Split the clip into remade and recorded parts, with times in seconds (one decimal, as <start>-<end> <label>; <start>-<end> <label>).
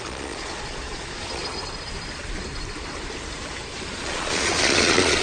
0.0-1.4 remade; 1.4-4.0 recorded; 4.0-5.2 remade